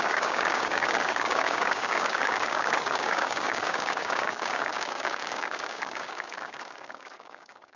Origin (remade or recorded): remade